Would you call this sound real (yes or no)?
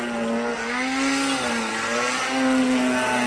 yes